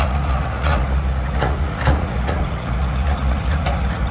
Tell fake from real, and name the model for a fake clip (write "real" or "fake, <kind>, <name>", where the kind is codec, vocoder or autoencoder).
fake, vocoder, Vocos